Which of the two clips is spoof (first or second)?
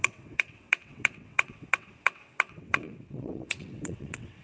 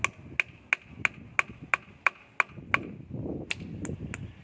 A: first